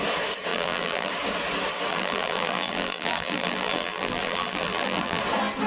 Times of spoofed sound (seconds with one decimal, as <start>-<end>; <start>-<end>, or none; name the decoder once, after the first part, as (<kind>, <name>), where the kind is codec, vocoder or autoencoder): 0.5-1.1 (vocoder, BigVGAN v2); 1.9-5.2